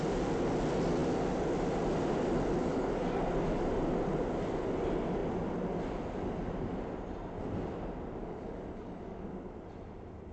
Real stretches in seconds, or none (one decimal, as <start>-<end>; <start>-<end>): 0.0-2.6; 3.2-8.2; 9.3-10.3